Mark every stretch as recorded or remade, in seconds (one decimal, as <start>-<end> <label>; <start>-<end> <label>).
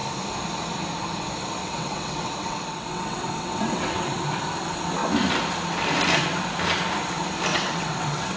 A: 0.0-1.6 recorded; 1.6-4.2 remade; 4.2-7.5 recorded; 7.5-8.4 remade